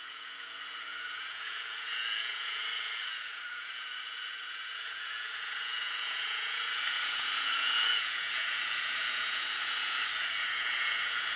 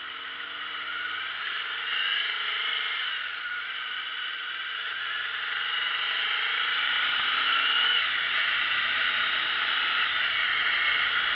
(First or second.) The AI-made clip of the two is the first